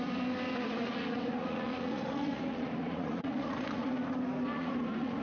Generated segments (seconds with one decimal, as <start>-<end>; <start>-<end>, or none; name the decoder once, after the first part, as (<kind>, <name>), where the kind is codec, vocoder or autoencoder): 0.8-3.9 (vocoder, Vocos); 4.5-5.2

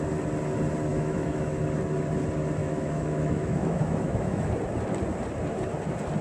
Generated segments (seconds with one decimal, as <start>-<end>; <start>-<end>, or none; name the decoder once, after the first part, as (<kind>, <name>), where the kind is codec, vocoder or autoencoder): 0.9-1.6 (autoencoder, DAC-VAE); 2.6-4.5

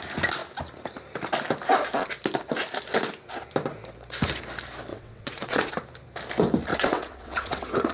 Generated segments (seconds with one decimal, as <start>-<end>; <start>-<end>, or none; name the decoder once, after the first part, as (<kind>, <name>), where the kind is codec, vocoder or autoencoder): 4.9-5.7 (vocoder, WaveNeXt); 6.7-7.9

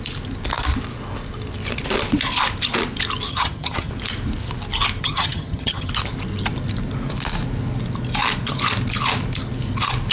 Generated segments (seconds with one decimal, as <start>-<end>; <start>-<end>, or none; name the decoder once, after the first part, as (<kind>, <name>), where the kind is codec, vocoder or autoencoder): 3.3-3.9 (vocoder, HiFi-GAN); 5.0-5.9

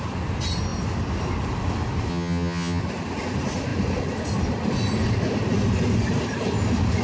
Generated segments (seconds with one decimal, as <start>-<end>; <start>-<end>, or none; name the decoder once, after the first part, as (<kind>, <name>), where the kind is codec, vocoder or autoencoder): 2.1-2.8 (vocoder, HiFi-GAN)

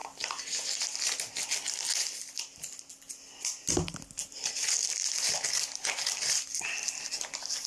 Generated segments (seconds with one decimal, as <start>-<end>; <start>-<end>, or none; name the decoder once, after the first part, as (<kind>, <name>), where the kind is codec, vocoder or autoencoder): none